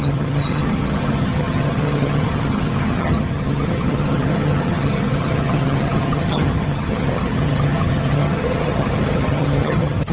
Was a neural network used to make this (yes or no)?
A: yes